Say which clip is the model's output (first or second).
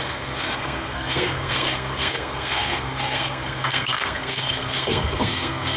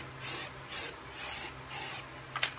first